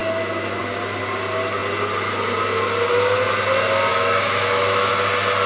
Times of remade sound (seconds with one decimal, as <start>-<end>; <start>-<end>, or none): 0.0-0.6; 3.9-4.9